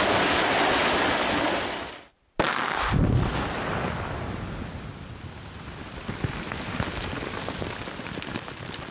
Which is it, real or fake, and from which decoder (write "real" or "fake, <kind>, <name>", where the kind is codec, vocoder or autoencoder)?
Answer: real